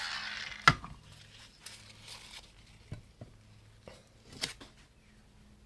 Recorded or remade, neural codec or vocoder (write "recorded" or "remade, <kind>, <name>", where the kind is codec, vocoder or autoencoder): recorded